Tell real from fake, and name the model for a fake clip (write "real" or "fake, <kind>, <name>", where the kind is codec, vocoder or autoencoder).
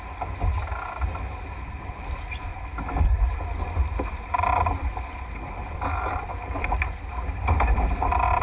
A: real